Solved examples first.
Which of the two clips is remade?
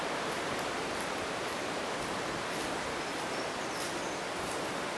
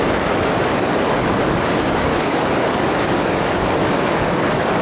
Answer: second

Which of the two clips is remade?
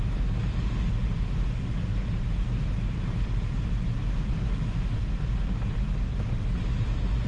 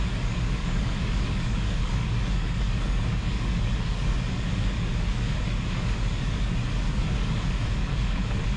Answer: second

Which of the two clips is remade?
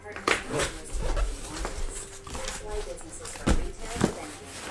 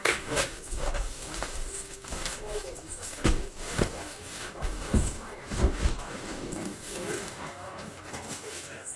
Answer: second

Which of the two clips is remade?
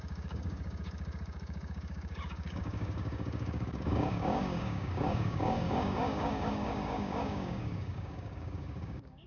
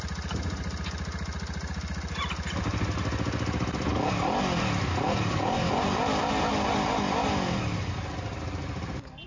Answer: first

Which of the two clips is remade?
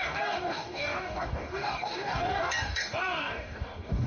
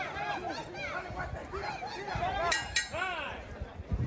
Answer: first